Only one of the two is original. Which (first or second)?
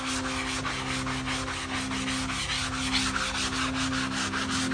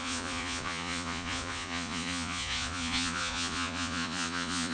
first